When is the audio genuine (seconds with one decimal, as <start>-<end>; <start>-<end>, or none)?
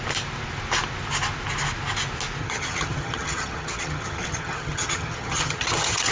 0.0-2.4